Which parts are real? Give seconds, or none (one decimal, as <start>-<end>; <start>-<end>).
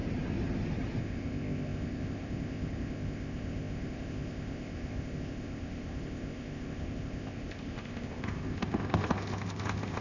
0.0-1.0